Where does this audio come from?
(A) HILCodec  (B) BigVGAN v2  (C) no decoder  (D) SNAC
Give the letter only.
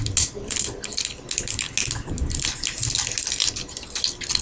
C